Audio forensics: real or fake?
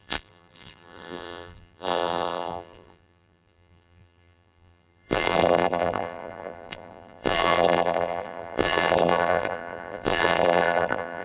fake